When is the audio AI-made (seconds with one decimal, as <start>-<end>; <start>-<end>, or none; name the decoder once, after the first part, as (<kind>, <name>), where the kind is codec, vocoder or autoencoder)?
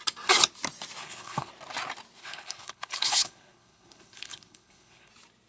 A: 1.0-1.5 (codec, HILCodec); 2.2-5.1